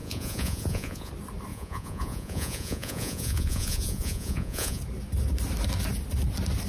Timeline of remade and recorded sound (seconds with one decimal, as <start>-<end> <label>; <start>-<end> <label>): 0.0-1.1 remade; 1.1-1.5 recorded; 1.5-4.8 remade; 4.8-6.7 recorded